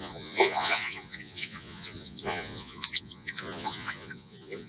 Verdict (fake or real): fake